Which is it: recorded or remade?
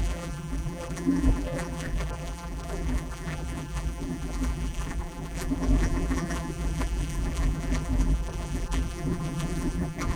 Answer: remade